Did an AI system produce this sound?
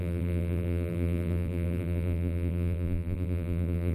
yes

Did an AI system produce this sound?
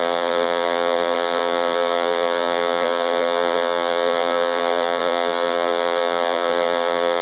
yes